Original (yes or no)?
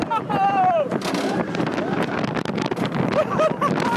yes